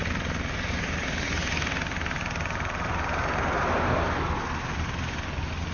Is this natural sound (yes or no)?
yes